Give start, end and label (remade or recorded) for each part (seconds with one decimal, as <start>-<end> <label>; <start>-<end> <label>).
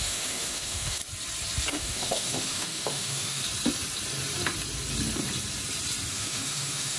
0.0-1.0 remade; 1.0-1.7 recorded; 1.7-3.4 remade; 3.4-6.1 recorded; 6.1-7.0 remade